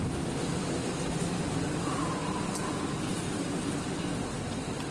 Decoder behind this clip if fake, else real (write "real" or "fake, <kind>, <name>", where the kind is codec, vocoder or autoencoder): fake, vocoder, BigVGAN v2